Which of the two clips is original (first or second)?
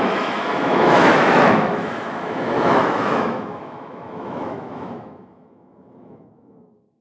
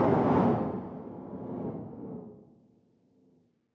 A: second